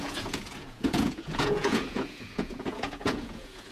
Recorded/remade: remade